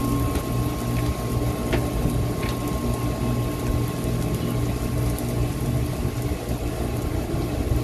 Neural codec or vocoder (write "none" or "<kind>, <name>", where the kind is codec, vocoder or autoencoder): none